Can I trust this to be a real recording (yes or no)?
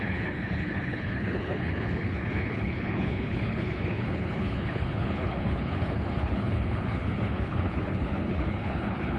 no